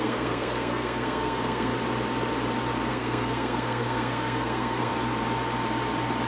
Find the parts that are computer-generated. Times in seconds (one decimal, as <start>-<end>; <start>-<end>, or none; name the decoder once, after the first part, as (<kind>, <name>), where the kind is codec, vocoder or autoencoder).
0.0-1.7 (codec, SNAC); 2.9-4.9